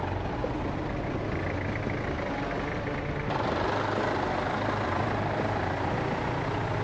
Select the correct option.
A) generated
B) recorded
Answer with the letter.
B